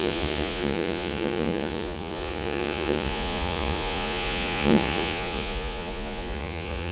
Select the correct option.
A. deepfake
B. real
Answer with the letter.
A